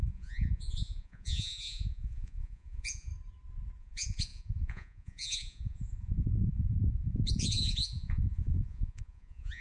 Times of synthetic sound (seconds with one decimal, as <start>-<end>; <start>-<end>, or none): 0.0-3.1; 3.8-9.6